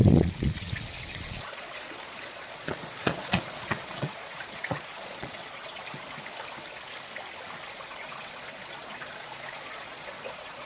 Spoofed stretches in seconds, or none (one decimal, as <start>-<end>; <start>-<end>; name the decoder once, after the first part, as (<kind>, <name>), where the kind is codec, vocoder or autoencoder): 0.0-5.8 (vocoder, Vocos); 7.7-10.7